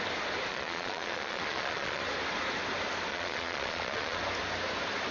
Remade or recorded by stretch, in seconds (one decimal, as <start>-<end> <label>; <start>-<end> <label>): 0.0-0.5 recorded; 0.5-2.0 remade; 2.0-3.1 recorded; 3.1-4.2 remade; 4.2-5.1 recorded